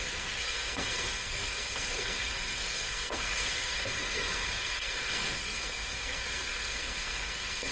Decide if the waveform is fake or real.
fake